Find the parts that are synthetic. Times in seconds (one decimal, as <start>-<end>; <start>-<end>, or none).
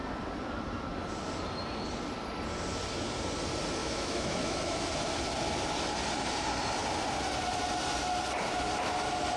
3.8-4.9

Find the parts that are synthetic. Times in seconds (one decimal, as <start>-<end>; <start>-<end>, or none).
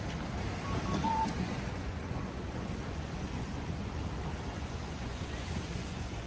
1.0-3.9; 4.5-6.3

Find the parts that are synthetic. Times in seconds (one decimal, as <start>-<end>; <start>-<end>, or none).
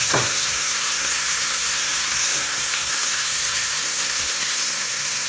0.0-5.3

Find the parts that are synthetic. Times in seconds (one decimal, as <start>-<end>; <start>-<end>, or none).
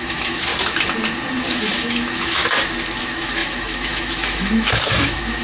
0.0-0.5; 1.4-2.4; 3.0-5.4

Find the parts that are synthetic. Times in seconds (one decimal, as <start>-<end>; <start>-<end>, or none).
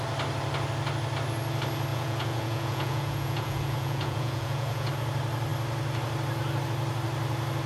1.9-4.9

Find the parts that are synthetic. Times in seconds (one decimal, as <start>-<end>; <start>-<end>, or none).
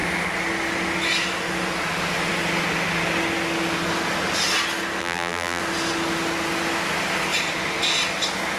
5.0-5.6